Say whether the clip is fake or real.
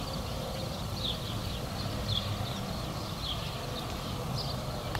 real